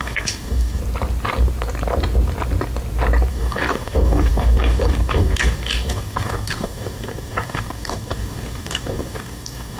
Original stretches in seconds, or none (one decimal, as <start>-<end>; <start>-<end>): 0.8-3.3